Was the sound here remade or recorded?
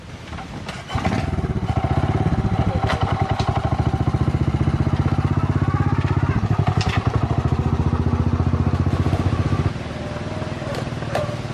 recorded